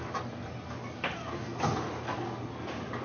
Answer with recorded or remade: recorded